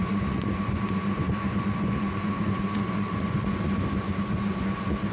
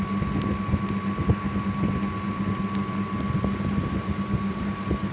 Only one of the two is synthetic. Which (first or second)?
first